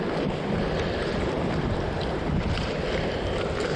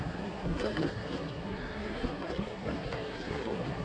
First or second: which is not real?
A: second